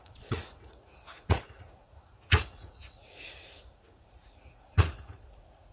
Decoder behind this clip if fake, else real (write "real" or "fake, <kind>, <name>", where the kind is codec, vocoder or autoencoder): fake, vocoder, Vocos